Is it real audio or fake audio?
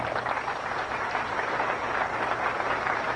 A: fake